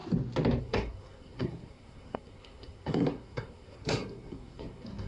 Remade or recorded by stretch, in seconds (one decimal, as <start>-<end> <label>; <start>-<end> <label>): 0.0-0.6 recorded; 0.6-5.1 remade